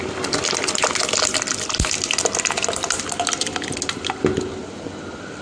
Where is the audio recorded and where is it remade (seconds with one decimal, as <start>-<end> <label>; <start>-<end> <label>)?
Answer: 0.0-5.4 recorded